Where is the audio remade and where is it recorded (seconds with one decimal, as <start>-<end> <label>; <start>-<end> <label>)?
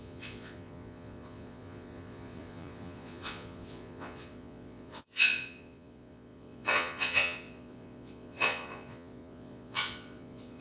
0.0-10.6 remade